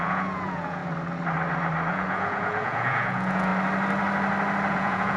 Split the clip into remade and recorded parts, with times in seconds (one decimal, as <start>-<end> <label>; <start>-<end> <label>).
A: 0.0-0.8 remade; 0.8-1.9 recorded; 1.9-3.5 remade; 3.5-4.7 recorded; 4.7-5.2 remade